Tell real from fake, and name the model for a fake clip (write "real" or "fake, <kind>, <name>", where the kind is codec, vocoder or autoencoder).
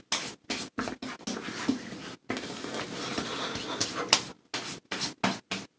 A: real